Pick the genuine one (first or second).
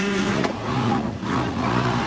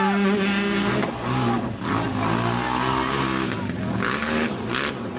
second